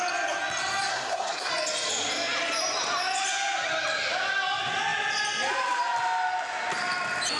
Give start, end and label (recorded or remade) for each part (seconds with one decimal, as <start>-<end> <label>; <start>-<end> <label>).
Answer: 0.0-0.9 recorded; 0.9-1.5 remade; 1.5-7.4 recorded